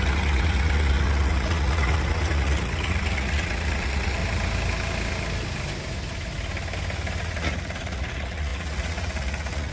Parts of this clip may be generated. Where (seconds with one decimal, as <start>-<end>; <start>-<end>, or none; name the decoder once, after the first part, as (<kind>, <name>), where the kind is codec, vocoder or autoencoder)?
0.0-4.2 (vocoder, Vocos); 7.2-9.7